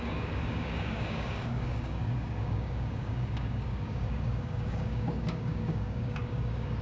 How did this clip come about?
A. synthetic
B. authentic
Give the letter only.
A